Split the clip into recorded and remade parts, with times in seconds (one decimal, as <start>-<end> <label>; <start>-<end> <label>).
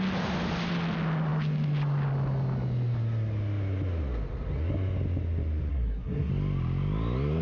0.0-5.7 recorded; 5.7-6.3 remade; 6.3-7.4 recorded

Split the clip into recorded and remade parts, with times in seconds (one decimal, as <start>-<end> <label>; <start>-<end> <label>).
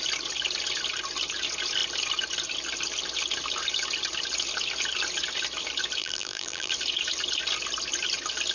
0.0-6.0 recorded; 6.0-6.7 remade; 6.7-8.5 recorded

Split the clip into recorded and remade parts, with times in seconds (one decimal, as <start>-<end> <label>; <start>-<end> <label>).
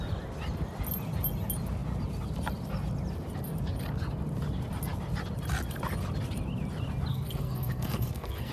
0.0-7.1 recorded; 7.1-8.5 remade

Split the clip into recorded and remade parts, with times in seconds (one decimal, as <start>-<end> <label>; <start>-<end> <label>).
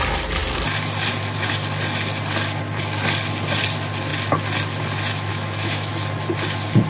0.0-5.3 recorded; 5.3-5.9 remade; 5.9-6.9 recorded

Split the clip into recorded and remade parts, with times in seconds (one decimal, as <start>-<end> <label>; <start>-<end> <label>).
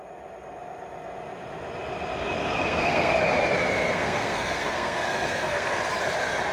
0.0-2.6 recorded; 2.6-3.1 remade; 3.1-3.9 recorded; 3.9-5.8 remade; 5.8-6.5 recorded